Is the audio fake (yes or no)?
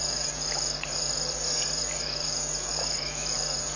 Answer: yes